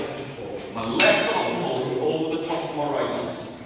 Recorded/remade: remade